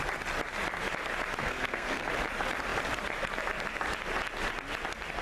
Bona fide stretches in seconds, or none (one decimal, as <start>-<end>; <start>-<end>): 0.0-1.4; 2.1-5.2